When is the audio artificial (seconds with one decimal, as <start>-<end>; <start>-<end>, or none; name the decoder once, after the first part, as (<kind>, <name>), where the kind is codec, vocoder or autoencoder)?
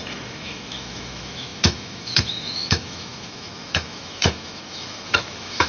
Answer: 0.0-5.7 (autoencoder, DAC-VAE)